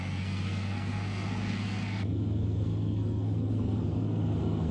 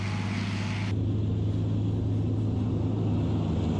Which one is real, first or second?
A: second